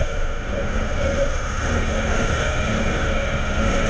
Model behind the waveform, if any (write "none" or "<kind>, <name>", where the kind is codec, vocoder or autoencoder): autoencoder, DAC-VAE